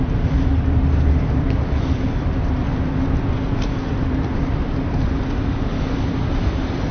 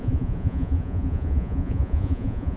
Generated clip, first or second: second